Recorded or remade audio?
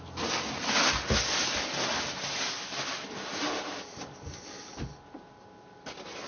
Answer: recorded